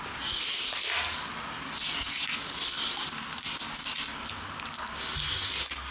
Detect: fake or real real